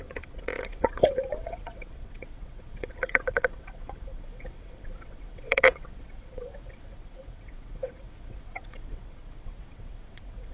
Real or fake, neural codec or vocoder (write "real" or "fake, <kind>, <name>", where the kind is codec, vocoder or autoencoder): fake, vocoder, WaveNeXt